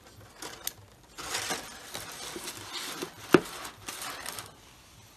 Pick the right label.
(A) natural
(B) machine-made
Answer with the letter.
A